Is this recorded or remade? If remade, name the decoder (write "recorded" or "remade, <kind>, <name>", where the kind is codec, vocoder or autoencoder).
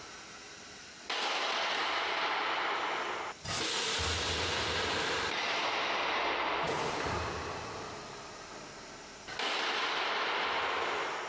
recorded